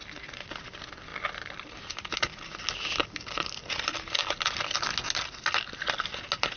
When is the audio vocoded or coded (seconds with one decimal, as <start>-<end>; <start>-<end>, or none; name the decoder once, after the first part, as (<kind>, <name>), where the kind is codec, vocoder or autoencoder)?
none